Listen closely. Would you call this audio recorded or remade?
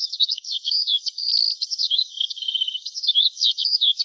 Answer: remade